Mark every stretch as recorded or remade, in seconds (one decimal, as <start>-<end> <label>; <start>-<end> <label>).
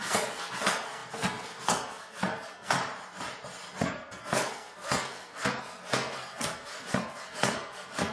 0.0-2.8 remade; 2.8-3.8 recorded; 3.8-8.1 remade